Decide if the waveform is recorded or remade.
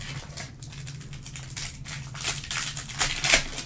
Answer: recorded